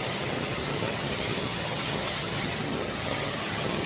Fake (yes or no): yes